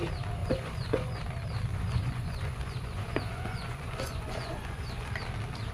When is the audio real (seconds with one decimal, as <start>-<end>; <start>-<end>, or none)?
0.0-0.4; 1.2-1.7; 5.1-5.7